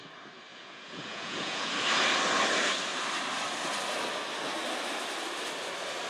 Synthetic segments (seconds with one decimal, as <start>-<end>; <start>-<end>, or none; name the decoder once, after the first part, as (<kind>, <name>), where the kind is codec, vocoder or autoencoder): 0.5-1.7 (vocoder, Vocos)